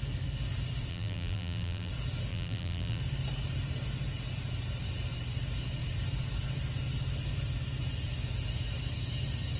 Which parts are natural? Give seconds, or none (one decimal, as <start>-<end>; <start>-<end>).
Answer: 0.0-0.9; 1.9-2.3; 3.0-9.6